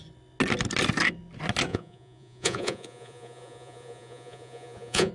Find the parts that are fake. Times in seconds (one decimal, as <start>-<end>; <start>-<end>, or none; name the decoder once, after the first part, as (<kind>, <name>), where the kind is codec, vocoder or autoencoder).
1.7-5.1 (vocoder, Vocos)